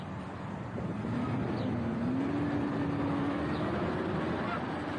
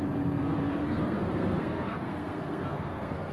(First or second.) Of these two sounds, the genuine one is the first